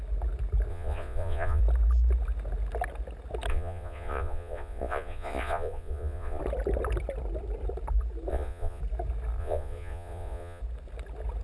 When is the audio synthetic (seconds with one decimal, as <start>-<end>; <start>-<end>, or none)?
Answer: 0.7-1.6; 3.5-6.4; 8.3-8.8; 9.4-10.6